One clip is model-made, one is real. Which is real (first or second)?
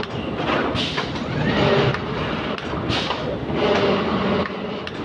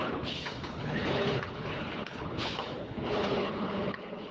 first